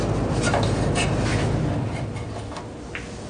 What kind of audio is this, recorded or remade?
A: recorded